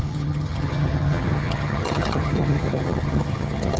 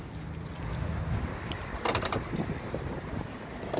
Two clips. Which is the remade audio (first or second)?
first